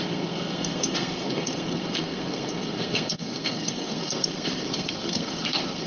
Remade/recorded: remade